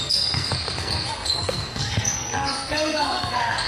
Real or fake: fake